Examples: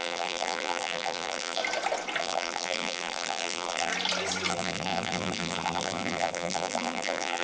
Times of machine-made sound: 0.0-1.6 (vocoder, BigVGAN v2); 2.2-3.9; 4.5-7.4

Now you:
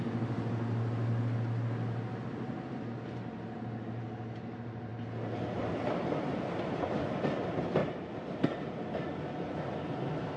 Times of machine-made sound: 7.8-8.4 (vocoder, BigVGAN v2)

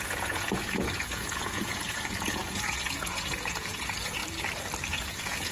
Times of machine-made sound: 0.0-4.2 (vocoder, Vocos); 4.9-5.5

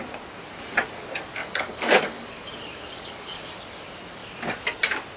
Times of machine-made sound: 1.4-3.6 (codec, DAC)

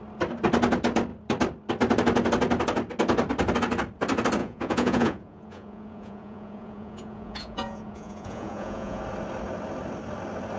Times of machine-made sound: 4.4-9.0 (vocoder, Vocos)

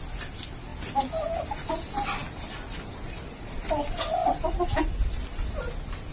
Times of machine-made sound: none